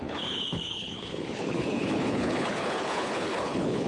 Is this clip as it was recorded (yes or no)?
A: no